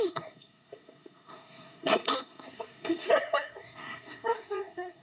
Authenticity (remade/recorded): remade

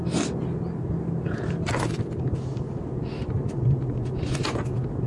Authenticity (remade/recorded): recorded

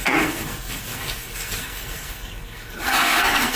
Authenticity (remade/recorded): remade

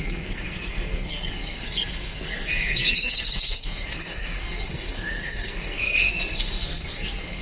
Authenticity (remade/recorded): remade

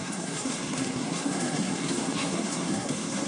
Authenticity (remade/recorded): remade